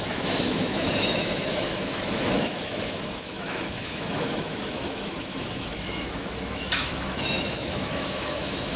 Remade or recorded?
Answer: remade